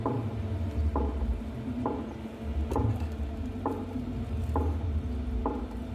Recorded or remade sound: recorded